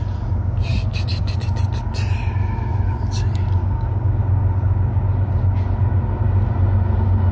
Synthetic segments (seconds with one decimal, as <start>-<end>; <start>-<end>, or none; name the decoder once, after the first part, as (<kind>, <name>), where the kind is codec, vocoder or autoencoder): 3.6-4.2 (codec, DAC)